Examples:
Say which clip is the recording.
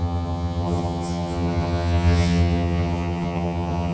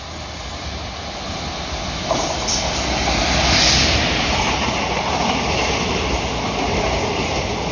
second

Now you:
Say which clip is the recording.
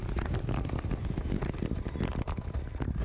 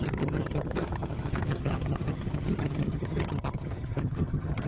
first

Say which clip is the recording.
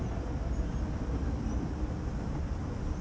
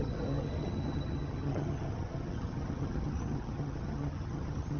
first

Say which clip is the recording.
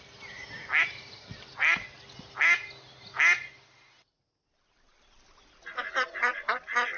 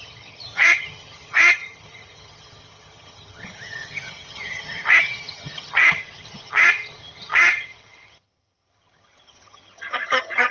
first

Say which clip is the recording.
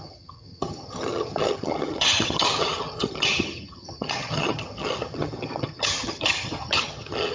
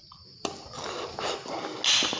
second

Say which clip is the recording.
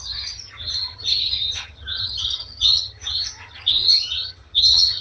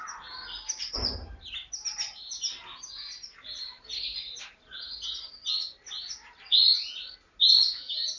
second